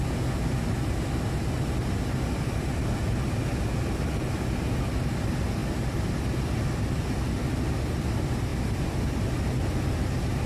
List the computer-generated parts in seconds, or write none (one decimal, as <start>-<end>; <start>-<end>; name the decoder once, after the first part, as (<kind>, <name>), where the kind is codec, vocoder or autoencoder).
none